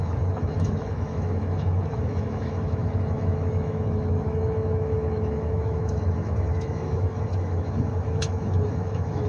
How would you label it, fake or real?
fake